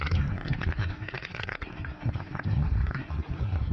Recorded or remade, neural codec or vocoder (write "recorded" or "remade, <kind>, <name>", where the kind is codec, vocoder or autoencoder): remade, codec, SNAC